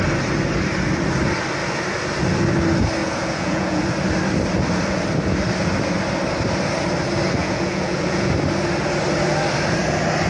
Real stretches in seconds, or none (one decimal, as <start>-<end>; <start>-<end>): 0.0-3.0; 3.8-7.4; 8.3-10.3